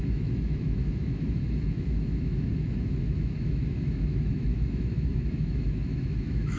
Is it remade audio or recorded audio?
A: remade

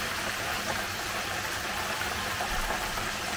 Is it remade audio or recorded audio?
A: remade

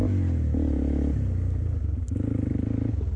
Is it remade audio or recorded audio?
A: recorded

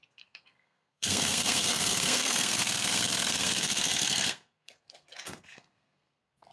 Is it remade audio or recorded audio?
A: remade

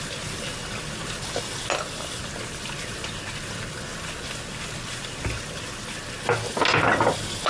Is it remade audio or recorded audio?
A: recorded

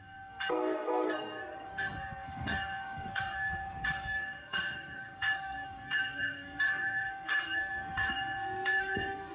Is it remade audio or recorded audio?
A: remade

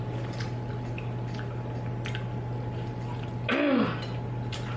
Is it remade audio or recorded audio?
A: recorded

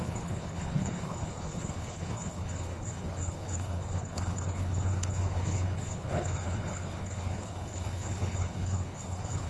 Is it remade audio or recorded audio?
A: remade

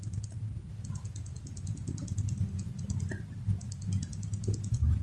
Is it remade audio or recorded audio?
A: recorded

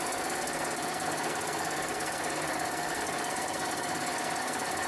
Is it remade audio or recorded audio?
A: remade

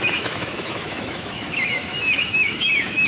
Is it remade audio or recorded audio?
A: remade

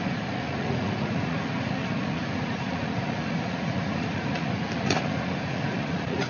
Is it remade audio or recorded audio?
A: remade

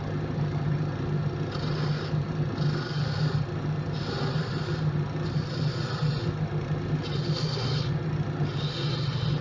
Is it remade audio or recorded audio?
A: recorded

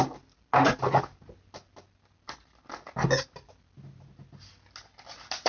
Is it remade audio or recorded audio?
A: recorded